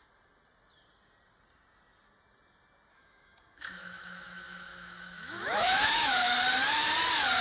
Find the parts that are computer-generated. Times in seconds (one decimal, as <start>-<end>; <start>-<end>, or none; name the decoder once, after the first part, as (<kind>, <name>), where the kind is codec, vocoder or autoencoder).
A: 2.9-6.3 (autoencoder, DAC-VAE)